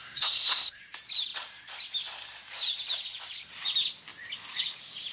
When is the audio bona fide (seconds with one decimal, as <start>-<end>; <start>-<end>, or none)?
0.8-5.1